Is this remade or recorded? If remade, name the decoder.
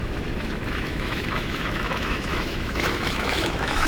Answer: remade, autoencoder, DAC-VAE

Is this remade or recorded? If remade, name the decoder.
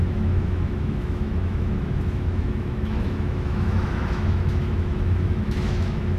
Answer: remade, autoencoder, DAC-VAE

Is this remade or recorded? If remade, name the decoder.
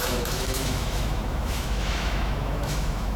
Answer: remade, autoencoder, DAC-VAE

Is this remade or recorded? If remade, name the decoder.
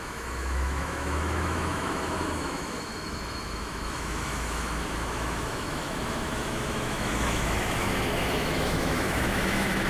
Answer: remade, autoencoder, DAC-VAE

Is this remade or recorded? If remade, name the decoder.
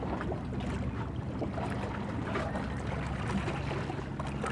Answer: recorded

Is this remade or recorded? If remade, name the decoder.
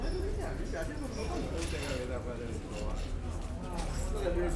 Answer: recorded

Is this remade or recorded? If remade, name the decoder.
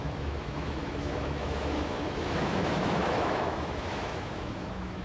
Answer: remade, autoencoder, DAC-VAE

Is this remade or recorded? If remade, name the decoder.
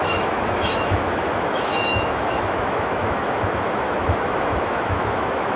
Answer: remade, autoencoder, DAC-VAE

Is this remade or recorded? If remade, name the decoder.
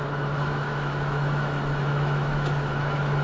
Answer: remade, autoencoder, DAC-VAE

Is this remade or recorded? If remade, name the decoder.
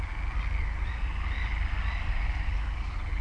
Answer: recorded